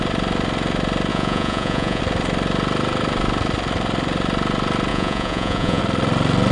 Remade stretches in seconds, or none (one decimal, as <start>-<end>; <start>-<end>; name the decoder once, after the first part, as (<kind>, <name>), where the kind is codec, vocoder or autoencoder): 1.1-2.0 (vocoder, Vocos); 4.9-5.8